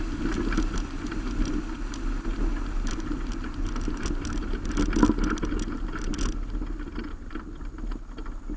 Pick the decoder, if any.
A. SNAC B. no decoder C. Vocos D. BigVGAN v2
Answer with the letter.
B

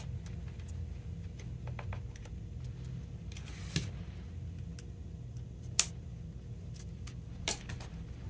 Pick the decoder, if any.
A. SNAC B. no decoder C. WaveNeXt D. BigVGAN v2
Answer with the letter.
B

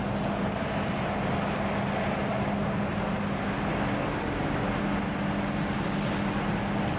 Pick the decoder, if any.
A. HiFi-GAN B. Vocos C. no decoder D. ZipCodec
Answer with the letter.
C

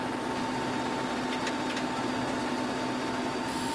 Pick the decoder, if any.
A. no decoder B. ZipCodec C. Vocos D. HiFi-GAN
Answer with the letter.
A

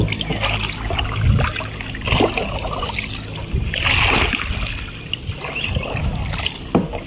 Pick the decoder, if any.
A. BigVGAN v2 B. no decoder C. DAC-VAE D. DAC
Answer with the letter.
B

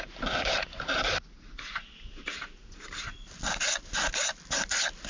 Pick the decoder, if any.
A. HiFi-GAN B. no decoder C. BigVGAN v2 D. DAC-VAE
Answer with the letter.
B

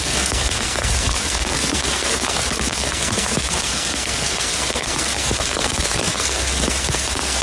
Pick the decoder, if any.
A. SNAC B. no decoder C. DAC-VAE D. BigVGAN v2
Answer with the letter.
A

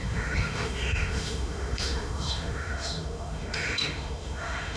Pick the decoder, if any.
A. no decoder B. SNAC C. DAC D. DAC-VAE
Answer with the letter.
D